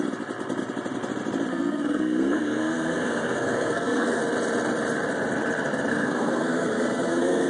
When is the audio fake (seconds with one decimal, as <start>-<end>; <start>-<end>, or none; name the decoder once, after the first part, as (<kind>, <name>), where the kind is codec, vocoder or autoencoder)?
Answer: 1.5-4.2 (codec, SNAC); 5.9-7.5